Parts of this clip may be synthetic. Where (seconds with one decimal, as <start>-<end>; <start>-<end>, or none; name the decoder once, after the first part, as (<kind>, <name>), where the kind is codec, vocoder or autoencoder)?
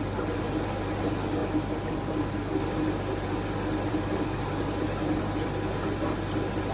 none